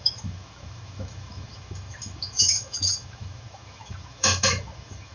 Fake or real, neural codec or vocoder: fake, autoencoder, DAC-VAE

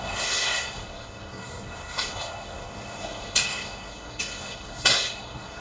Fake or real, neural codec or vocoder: fake, codec, SNAC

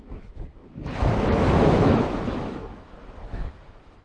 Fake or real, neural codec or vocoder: fake, autoencoder, DAC-VAE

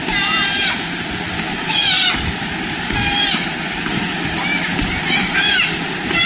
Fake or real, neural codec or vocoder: real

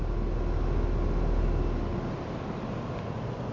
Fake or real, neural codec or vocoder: real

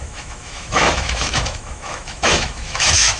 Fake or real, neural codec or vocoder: fake, autoencoder, DAC-VAE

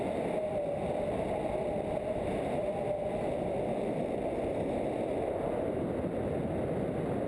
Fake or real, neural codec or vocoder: real